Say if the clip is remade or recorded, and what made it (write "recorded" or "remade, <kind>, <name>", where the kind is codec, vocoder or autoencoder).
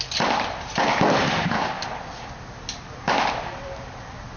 recorded